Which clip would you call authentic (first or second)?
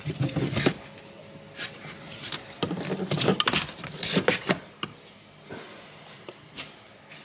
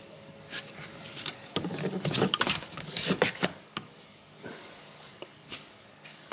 first